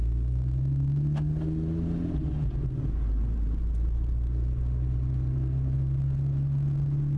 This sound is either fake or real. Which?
real